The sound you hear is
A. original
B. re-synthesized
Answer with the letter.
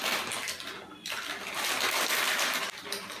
A